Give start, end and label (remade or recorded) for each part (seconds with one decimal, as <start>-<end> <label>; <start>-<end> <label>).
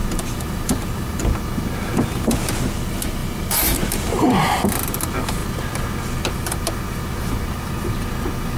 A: 0.0-1.2 remade; 1.2-3.2 recorded; 3.2-4.6 remade; 4.6-8.6 recorded